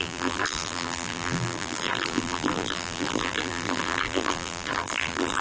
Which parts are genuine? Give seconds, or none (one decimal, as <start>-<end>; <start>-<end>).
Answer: none